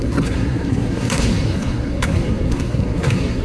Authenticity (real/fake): fake